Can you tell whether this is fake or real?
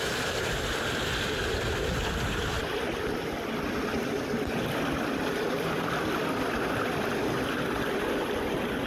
real